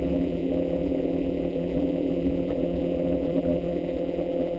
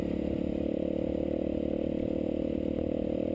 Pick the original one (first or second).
second